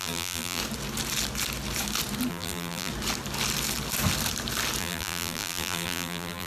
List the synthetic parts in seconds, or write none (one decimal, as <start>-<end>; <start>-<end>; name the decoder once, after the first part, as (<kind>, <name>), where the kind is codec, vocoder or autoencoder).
0.0-0.6 (vocoder, BigVGAN v2); 2.3-2.9; 4.8-6.5